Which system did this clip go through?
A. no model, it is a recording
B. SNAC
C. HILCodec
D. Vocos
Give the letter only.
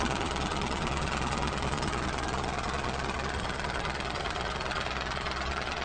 D